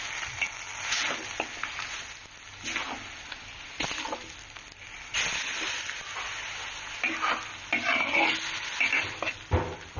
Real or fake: real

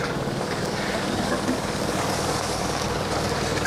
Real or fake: fake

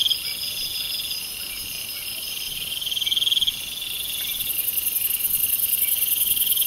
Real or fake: real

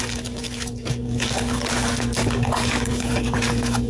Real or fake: fake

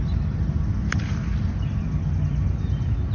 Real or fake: real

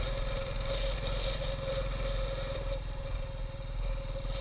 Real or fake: real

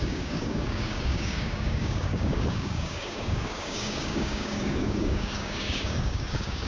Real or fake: fake